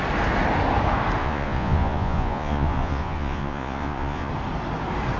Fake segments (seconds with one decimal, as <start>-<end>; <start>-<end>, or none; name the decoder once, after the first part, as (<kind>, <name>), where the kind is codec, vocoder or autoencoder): 1.2-4.3 (vocoder, Vocos)